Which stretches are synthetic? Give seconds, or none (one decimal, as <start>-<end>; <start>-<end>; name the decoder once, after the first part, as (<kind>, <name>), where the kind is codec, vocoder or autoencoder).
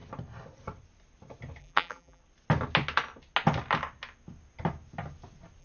1.6-2.2 (vocoder, BigVGAN v2)